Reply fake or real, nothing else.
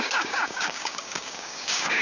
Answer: fake